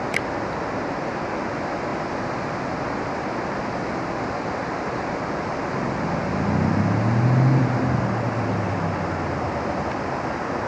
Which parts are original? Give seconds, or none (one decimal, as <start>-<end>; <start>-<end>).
0.0-10.7